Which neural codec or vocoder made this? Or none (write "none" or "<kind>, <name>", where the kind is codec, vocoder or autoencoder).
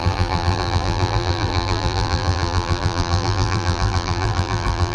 vocoder, BigVGAN v2